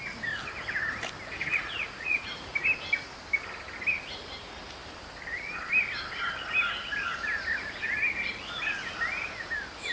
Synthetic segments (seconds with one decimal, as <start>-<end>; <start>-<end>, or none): 1.4-2.5